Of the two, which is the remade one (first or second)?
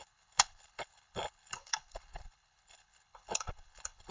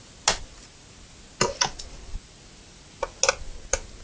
first